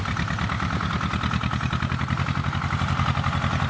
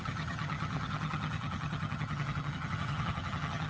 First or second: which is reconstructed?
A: second